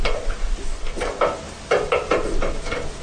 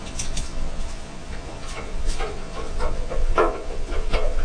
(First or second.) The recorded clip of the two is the first